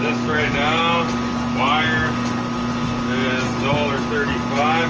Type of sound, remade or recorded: recorded